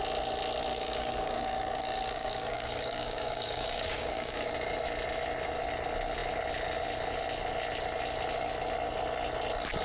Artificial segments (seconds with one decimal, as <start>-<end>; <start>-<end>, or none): 0.7-4.5